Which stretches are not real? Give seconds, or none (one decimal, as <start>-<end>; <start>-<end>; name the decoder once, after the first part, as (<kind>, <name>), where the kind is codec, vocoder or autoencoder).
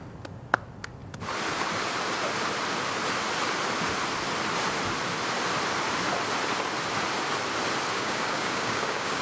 8.0-9.2 (codec, DAC)